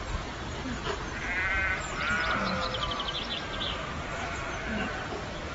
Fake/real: real